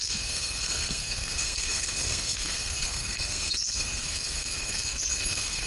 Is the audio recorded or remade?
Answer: remade